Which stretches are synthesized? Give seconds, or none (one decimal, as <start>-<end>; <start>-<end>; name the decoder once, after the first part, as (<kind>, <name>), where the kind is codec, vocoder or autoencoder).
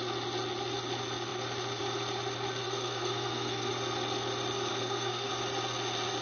2.6-3.7 (codec, SNAC); 4.7-5.3